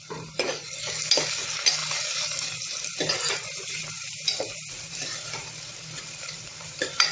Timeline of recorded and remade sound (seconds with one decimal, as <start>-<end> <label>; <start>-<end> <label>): 0.0-0.7 remade; 0.7-1.3 recorded; 1.3-7.1 remade